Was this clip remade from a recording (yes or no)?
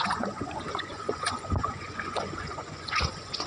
yes